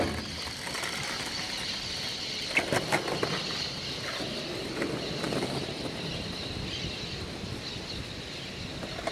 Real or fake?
real